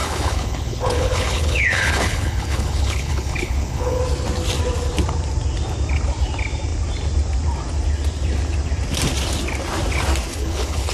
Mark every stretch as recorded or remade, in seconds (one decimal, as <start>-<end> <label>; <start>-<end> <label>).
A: 0.0-4.0 remade; 4.0-10.3 recorded; 10.3-10.9 remade